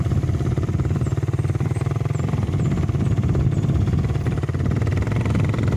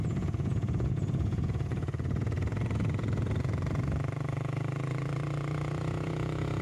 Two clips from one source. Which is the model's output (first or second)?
second